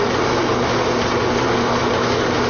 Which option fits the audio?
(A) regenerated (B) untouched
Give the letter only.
B